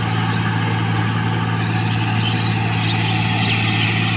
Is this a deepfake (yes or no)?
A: no